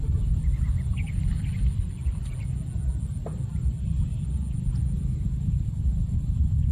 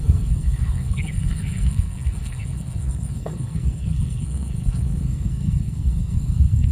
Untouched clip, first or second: first